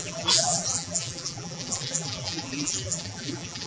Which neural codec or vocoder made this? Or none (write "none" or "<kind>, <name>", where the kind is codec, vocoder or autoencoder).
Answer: vocoder, BigVGAN v2